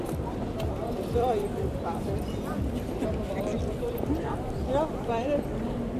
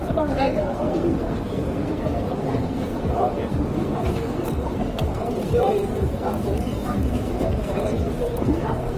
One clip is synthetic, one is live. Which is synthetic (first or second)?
second